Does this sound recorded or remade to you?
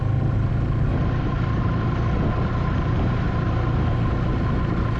recorded